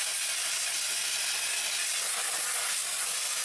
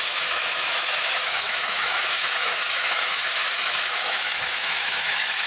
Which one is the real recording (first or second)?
first